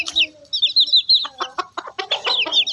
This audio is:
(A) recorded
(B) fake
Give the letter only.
A